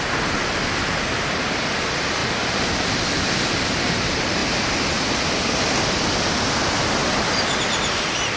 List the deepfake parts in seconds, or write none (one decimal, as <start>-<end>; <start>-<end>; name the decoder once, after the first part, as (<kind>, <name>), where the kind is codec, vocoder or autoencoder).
0.0-4.4 (vocoder, BigVGAN v2); 5.8-7.0; 7.8-8.4